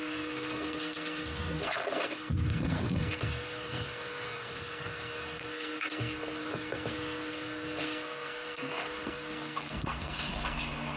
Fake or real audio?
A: fake